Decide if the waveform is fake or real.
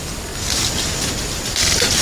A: real